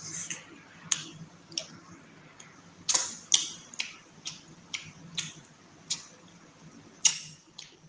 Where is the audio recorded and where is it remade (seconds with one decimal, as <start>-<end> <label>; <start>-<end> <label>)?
0.0-7.1 recorded; 7.1-7.9 remade